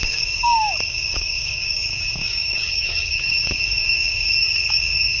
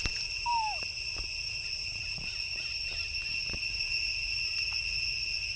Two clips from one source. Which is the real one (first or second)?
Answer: second